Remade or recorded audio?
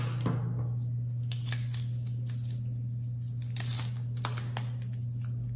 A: recorded